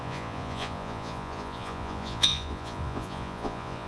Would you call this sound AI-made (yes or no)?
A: yes